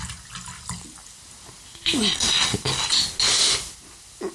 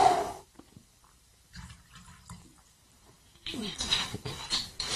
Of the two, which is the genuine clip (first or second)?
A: first